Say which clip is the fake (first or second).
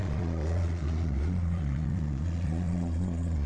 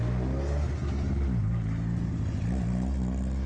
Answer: first